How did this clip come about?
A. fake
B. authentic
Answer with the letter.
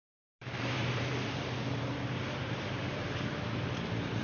A